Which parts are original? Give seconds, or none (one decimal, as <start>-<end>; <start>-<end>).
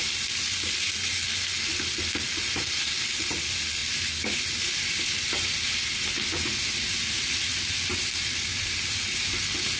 0.0-9.8